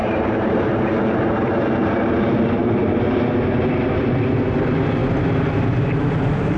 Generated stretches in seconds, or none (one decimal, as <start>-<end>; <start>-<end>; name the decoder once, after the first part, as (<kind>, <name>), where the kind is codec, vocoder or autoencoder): 0.0-1.3 (vocoder, BigVGAN v2); 1.8-3.4